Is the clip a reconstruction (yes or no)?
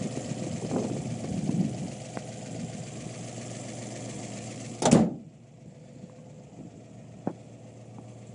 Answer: no